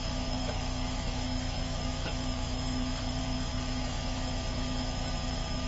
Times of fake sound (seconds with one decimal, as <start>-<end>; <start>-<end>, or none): 0.0-5.7